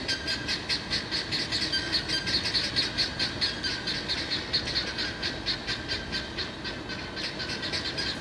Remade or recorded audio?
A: recorded